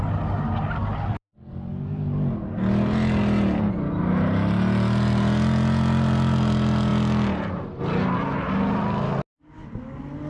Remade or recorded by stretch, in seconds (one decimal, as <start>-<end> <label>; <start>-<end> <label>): 0.0-10.3 recorded